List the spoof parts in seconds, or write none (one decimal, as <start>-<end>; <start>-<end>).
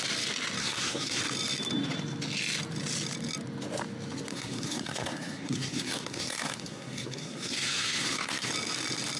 0.6-1.2; 4.3-8.5